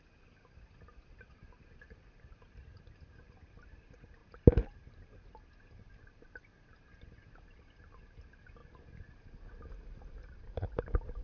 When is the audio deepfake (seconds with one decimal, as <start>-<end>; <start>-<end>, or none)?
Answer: none